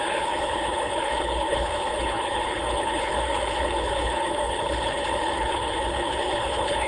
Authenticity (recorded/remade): remade